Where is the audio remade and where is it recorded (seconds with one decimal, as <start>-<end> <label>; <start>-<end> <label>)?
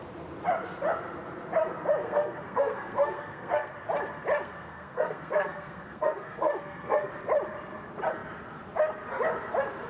0.0-2.0 recorded; 2.0-3.7 remade; 3.7-4.4 recorded; 4.4-7.1 remade; 7.1-9.9 recorded